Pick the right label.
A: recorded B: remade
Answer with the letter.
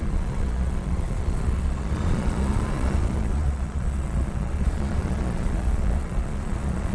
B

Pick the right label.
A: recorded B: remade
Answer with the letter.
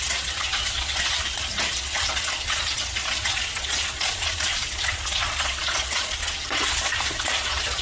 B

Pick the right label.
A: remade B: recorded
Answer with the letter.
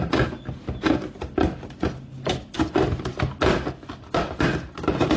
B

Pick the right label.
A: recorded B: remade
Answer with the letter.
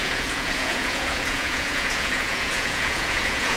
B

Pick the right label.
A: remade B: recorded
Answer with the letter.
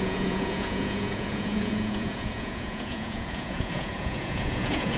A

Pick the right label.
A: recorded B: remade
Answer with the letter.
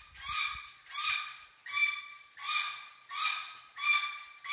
A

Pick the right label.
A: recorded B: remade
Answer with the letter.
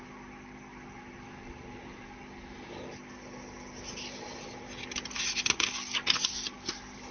A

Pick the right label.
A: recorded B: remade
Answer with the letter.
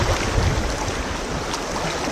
A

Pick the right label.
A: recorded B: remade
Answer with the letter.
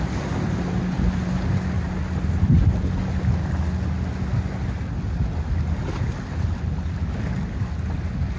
A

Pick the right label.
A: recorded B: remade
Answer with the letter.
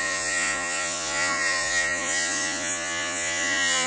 B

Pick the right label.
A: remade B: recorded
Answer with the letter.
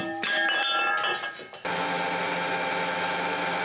B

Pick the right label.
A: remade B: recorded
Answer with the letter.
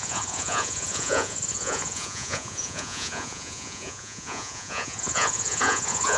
A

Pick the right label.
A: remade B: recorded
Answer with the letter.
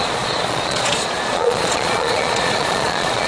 A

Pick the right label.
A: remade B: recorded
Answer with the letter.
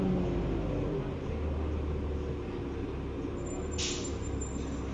B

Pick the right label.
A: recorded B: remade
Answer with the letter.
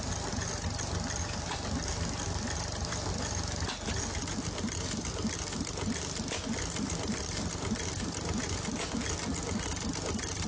A